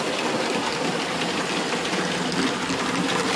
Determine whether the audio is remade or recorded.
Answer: recorded